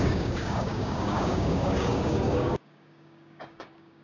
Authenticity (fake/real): fake